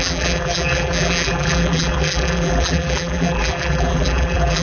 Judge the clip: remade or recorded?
remade